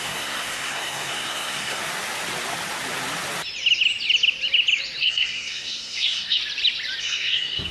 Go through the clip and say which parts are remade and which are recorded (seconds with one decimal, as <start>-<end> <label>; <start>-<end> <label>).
0.0-1.8 remade; 1.8-5.0 recorded; 5.0-6.4 remade; 6.4-7.0 recorded; 7.0-7.7 remade